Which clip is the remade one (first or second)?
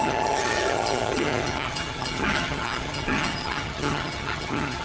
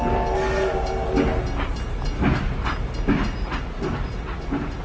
first